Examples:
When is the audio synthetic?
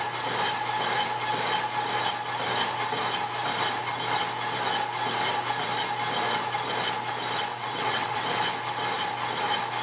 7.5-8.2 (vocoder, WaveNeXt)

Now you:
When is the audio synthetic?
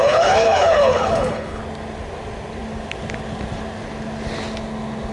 0.0-1.6 (codec, HILCodec)